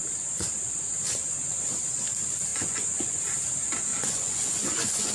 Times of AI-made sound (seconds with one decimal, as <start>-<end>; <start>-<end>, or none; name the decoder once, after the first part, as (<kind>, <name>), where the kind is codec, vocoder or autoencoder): 2.5-3.2 (vocoder, Vocos); 3.9-5.1